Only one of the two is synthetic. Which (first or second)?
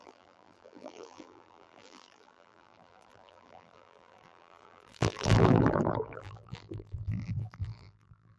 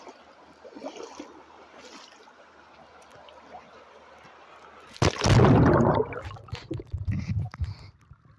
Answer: first